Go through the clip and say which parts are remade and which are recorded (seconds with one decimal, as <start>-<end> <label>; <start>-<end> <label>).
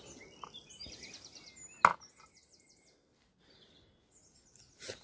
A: 0.0-1.9 recorded; 1.9-3.4 remade; 3.4-5.0 recorded